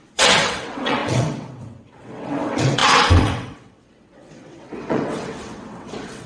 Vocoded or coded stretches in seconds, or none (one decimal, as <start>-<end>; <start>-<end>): 0.0-6.3